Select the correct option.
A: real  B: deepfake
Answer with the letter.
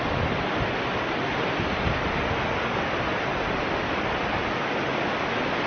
A